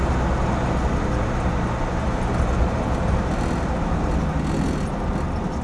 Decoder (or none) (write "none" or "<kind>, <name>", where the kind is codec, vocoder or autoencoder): none